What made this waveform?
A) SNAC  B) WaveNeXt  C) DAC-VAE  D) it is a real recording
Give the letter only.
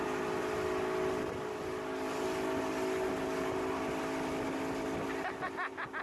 D